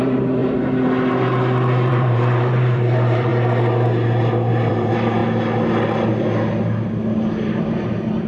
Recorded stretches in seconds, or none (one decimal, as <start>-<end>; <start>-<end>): 0.4-1.9; 3.3-4.7; 5.2-7.6